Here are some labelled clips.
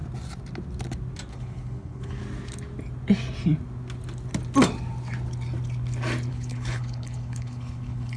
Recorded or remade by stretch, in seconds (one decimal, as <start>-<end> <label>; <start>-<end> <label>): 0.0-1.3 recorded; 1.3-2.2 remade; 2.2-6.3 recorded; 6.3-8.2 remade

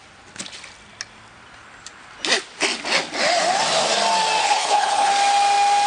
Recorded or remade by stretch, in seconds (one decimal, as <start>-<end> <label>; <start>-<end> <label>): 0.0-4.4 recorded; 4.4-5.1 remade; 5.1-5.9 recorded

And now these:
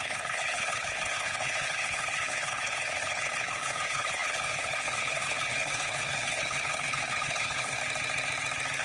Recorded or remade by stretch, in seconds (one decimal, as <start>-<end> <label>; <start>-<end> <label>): 0.0-7.8 remade; 7.8-8.8 recorded

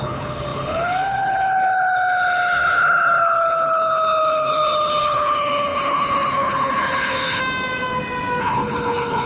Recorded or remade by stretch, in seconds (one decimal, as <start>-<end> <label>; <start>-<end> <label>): 0.0-7.4 remade; 7.4-8.4 recorded; 8.4-9.3 remade